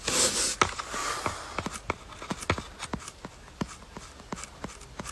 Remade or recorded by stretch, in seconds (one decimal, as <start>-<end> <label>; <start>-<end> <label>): 0.0-5.1 recorded